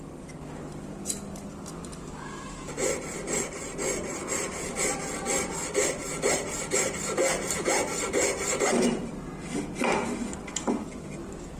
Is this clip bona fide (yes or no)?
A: yes